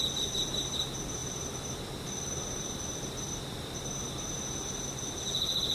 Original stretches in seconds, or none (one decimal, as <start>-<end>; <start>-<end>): 0.0-1.2; 4.4-5.7